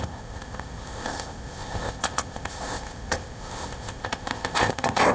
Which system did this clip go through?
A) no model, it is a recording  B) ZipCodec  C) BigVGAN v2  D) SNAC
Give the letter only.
B